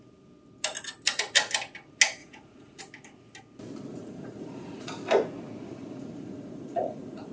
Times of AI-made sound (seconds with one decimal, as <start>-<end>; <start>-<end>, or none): 2.2-2.8; 3.9-4.9; 5.6-7.3